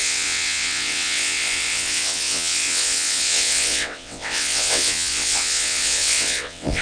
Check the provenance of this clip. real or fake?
fake